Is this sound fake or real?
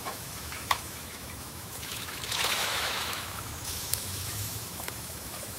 fake